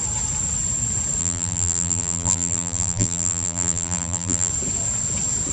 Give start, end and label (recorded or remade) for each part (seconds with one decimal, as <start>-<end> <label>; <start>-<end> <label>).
0.0-1.2 recorded; 1.2-4.5 remade; 4.5-5.5 recorded